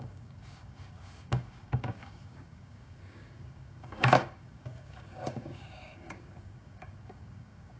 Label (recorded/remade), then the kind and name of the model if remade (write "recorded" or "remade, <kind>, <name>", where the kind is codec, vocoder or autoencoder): remade, codec, DAC